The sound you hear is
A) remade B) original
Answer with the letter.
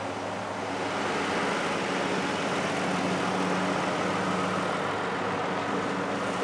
B